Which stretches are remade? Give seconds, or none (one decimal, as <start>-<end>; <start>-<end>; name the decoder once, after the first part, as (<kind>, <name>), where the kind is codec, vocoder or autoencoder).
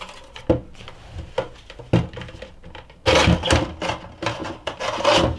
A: 4.4-5.0 (vocoder, BigVGAN v2)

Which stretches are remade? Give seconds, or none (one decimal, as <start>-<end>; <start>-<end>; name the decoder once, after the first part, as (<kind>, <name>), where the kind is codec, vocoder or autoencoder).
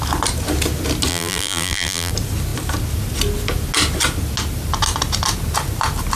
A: 1.1-2.1 (vocoder, BigVGAN v2)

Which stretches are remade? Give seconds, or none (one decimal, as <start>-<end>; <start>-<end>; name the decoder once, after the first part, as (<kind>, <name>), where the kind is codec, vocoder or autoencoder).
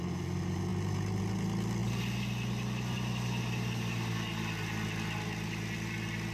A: none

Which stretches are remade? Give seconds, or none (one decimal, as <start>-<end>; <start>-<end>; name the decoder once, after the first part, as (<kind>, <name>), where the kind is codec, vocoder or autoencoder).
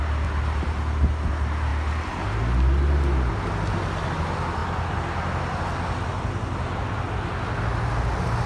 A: none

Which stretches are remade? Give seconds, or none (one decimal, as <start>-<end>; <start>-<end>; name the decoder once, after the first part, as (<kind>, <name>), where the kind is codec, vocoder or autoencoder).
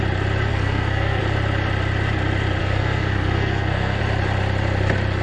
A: 0.5-1.2 (codec, SNAC); 2.6-4.0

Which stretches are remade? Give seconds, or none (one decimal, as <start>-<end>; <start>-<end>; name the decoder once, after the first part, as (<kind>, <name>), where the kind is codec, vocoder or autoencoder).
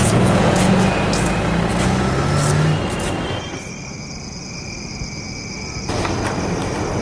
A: 0.0-0.7 (vocoder, Vocos)